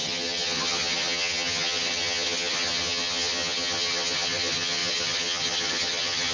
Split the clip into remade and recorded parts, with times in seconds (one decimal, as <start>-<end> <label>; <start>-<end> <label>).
0.0-6.3 remade